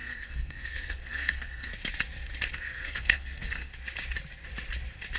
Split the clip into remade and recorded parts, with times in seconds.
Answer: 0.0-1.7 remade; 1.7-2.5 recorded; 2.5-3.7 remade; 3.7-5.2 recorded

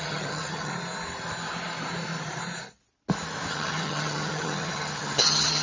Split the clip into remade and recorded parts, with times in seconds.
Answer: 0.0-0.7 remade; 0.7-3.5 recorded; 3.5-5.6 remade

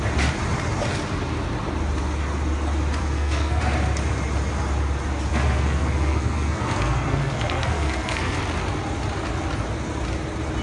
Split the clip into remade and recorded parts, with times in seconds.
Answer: 0.0-3.0 recorded; 3.0-3.6 remade; 3.6-5.3 recorded; 5.3-8.4 remade; 8.4-10.6 recorded

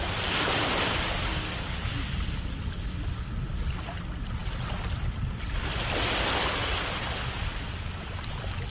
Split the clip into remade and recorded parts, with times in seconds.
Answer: 0.0-8.7 recorded